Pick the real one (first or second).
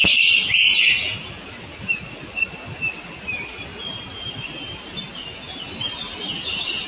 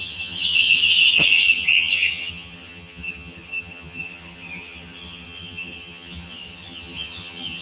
first